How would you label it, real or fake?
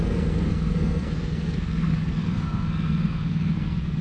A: fake